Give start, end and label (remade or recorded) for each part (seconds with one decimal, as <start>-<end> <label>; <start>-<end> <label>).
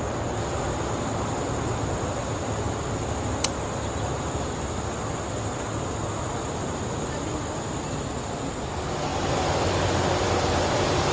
0.0-11.1 recorded